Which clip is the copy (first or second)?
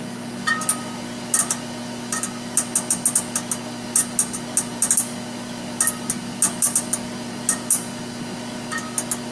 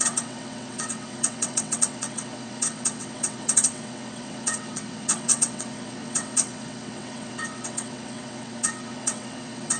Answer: second